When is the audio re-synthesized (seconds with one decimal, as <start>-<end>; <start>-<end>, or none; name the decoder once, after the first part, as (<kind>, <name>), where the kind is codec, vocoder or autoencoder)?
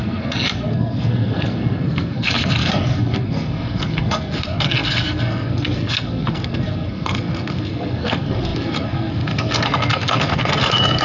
0.0-11.0 (codec, SNAC)